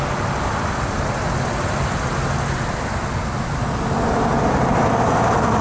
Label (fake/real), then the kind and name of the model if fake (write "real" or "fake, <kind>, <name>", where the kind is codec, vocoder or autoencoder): real